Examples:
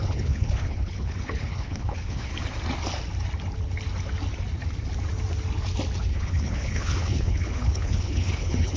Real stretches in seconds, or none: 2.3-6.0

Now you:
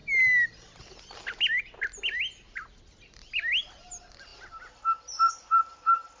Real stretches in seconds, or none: 0.0-6.2

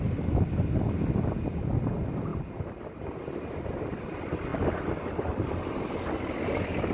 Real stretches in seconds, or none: 0.0-6.9

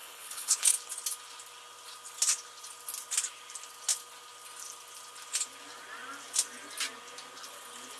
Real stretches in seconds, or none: 0.7-8.0

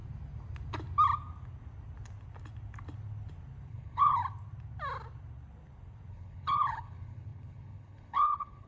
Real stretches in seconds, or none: 0.0-3.7; 4.2-6.1

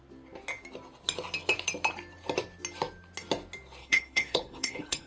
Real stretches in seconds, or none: 0.0-3.8

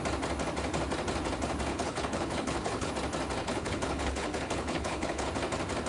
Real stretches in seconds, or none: 0.0-1.7; 2.9-3.4; 5.3-5.9